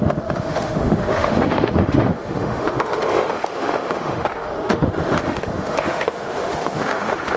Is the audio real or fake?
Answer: fake